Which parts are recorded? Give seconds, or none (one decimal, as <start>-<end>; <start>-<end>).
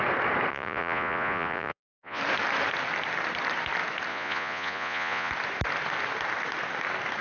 0.0-0.5; 2.2-4.1; 5.3-7.2